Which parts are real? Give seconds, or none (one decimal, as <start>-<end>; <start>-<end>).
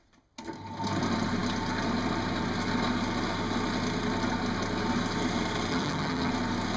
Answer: 0.0-5.7; 6.3-6.8